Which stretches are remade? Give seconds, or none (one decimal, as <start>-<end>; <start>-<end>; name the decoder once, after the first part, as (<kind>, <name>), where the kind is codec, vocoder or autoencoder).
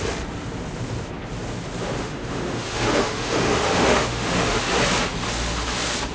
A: 2.0-4.6 (autoencoder, DAC-VAE)